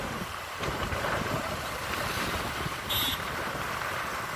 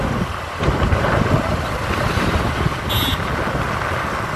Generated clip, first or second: first